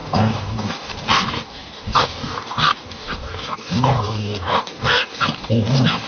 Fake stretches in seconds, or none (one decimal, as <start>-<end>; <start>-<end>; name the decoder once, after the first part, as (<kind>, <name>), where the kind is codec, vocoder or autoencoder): 0.0-6.1 (codec, DAC)